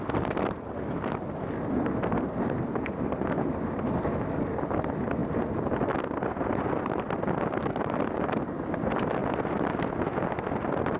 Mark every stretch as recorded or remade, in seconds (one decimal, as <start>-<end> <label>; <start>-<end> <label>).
0.0-9.2 recorded; 9.2-9.8 remade; 9.8-11.0 recorded